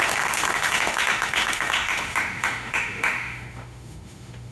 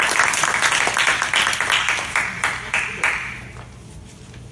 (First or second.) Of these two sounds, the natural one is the second